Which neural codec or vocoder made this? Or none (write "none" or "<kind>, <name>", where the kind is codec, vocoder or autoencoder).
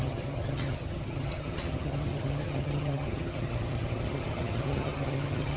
vocoder, HiFi-GAN